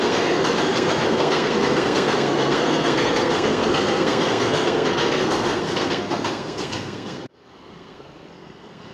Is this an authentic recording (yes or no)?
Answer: no